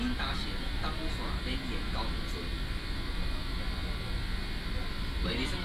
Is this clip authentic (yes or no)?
yes